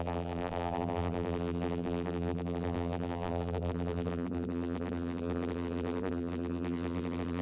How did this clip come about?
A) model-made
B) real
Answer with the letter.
A